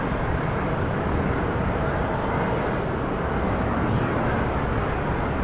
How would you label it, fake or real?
real